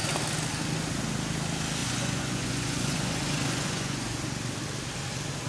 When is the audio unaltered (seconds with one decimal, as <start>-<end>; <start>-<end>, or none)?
0.0-1.8; 4.2-5.5